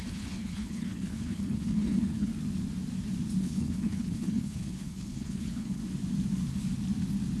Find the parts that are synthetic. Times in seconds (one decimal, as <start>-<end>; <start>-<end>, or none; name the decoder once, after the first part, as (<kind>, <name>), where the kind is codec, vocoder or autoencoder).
0.0-2.3 (codec, HILCodec); 3.4-5.8